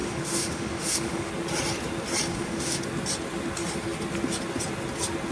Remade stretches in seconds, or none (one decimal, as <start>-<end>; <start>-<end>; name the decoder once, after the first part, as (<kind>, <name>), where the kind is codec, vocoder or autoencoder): 0.0-1.3 (autoencoder, DAC-VAE); 2.3-2.8